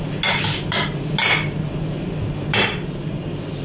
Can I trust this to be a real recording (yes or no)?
yes